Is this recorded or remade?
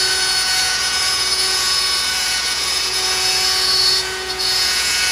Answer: remade